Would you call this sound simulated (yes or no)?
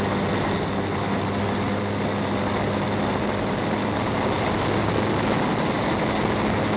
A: no